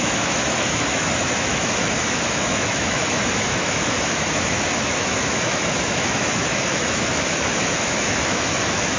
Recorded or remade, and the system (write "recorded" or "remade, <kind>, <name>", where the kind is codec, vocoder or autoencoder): remade, autoencoder, DAC-VAE